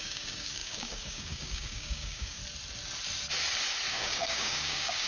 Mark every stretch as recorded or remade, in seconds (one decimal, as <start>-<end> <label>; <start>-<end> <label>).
0.0-2.4 remade; 2.4-3.9 recorded; 3.9-5.1 remade

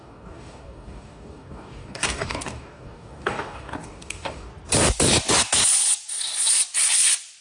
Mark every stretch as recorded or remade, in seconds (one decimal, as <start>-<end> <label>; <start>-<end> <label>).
0.0-4.5 remade; 4.5-7.4 recorded

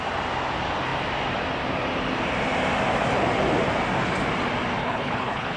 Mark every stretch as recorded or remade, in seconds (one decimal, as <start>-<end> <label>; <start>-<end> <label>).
0.0-4.8 recorded; 4.8-5.6 remade